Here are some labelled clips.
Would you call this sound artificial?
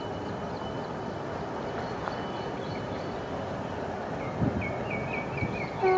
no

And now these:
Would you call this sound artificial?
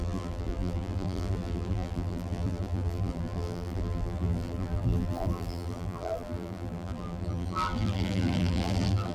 yes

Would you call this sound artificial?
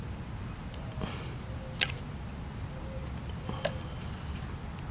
no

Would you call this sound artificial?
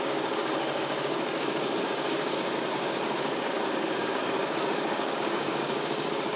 yes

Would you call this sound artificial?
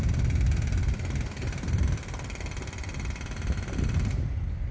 no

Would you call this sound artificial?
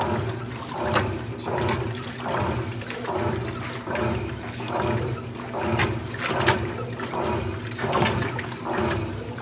no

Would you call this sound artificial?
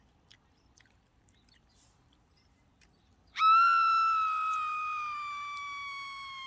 no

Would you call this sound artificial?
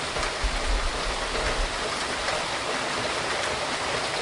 no